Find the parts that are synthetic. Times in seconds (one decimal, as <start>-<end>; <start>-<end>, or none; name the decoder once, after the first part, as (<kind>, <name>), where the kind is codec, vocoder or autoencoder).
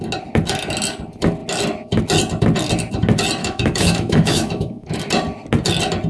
3.4-5.0 (autoencoder, DAC-VAE)